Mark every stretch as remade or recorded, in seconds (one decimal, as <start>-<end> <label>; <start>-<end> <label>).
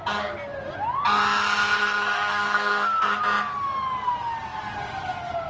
0.0-1.8 recorded; 1.8-3.2 remade; 3.2-5.5 recorded